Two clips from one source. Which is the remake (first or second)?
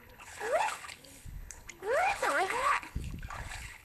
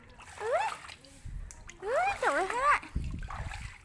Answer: first